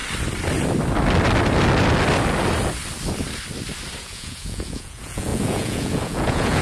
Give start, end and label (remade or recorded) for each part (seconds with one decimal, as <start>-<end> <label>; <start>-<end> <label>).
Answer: 0.0-4.0 recorded; 4.0-6.6 remade